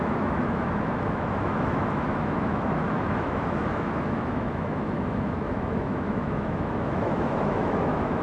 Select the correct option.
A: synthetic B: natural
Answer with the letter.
A